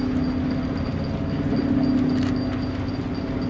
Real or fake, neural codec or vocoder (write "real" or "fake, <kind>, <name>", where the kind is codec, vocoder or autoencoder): real